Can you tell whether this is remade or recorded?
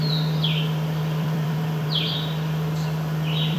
remade